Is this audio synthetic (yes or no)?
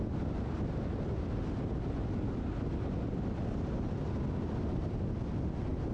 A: no